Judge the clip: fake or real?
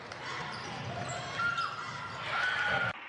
real